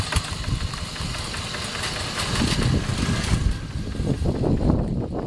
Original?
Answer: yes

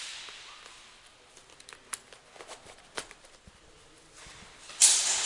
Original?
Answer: yes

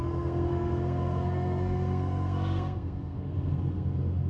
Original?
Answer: no